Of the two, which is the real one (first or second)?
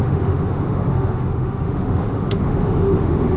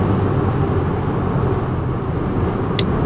second